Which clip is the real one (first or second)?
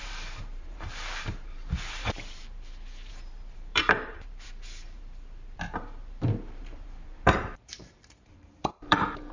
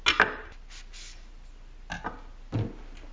second